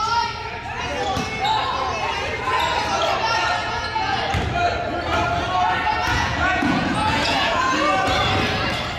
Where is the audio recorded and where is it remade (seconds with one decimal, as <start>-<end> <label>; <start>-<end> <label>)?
0.0-3.6 recorded; 3.6-4.2 remade; 4.2-6.1 recorded; 6.1-7.6 remade; 7.6-9.0 recorded